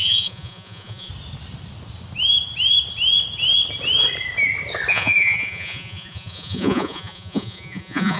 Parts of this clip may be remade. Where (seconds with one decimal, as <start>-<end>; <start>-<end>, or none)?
0.0-1.1; 4.9-8.2